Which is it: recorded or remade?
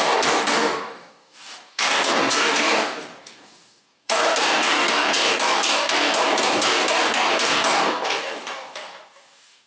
remade